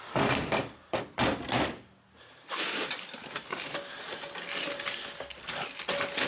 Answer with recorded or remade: recorded